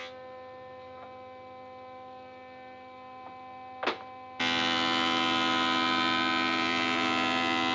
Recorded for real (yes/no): yes